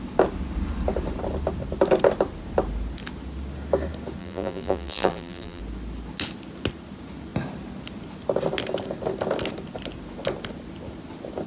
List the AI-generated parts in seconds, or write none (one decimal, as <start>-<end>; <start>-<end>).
4.2-5.6